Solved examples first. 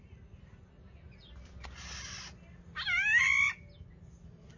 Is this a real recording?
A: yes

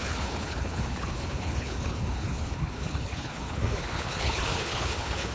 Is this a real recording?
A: no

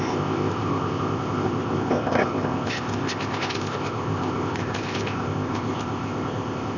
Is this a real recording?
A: no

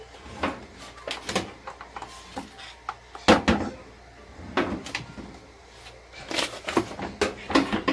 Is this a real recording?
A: yes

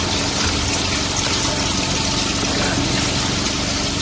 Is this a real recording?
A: yes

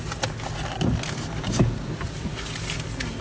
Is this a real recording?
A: yes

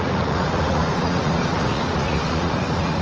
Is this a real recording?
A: no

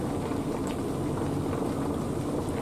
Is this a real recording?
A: no